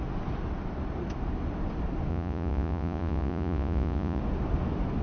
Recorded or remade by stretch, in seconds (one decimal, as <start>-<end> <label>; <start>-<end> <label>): 0.0-2.1 recorded; 2.1-4.2 remade; 4.2-5.0 recorded